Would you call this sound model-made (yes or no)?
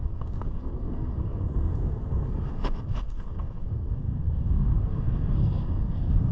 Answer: yes